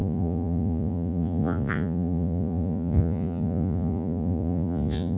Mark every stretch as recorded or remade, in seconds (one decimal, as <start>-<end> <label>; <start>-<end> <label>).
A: 0.0-5.2 remade